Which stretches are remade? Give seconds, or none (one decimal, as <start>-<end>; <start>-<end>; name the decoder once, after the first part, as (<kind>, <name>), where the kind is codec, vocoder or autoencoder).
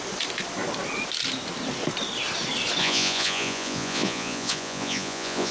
2.8-5.5 (vocoder, Vocos)